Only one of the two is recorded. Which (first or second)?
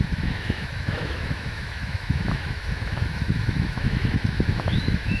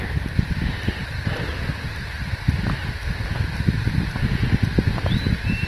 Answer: second